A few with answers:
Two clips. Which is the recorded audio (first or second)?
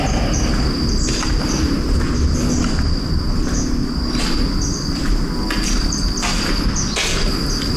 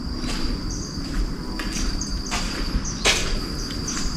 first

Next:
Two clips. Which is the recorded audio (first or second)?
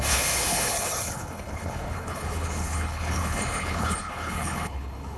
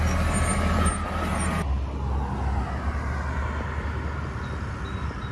second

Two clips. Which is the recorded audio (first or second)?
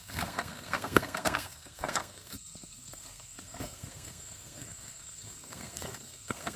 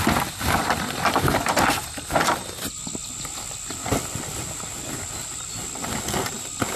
second